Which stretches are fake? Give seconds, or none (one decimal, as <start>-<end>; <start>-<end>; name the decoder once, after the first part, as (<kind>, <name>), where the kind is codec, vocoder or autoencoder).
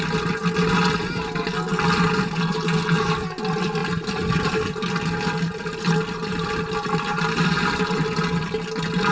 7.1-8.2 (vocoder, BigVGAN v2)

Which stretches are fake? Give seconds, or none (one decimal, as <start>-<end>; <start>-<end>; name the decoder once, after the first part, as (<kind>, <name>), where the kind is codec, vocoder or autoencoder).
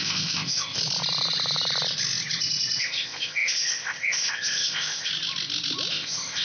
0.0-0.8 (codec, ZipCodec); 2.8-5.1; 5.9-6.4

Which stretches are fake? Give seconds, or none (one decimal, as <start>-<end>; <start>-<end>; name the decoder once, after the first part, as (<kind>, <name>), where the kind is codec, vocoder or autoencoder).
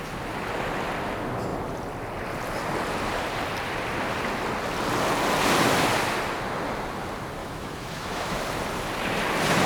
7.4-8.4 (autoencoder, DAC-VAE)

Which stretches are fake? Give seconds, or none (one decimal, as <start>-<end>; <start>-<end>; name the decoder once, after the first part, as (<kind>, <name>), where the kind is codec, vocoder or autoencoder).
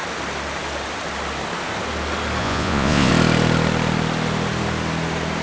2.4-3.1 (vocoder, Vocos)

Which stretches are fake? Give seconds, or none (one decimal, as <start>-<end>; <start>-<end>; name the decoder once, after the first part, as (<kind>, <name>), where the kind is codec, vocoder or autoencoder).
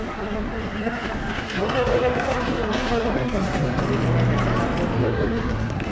0.0-3.8 (codec, SNAC); 5.0-5.9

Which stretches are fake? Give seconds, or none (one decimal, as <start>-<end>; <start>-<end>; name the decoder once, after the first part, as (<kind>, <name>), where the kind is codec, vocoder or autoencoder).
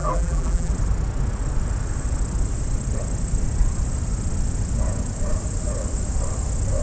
0.0-0.7 (vocoder, BigVGAN v2)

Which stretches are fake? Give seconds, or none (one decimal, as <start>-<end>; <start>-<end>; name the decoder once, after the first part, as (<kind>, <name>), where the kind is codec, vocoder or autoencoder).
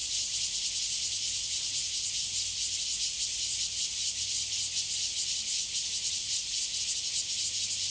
0.0-0.8 (vocoder, BigVGAN v2); 2.2-4.6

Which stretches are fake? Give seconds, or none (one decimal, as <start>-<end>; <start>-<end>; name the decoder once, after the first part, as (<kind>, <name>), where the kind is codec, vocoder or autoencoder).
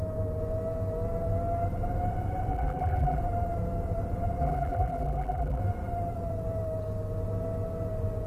2.5-3.2 (vocoder, BigVGAN v2); 4.4-5.6